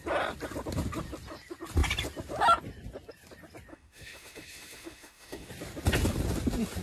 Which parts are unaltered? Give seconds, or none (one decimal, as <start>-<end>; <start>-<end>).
0.0-3.7; 5.5-6.8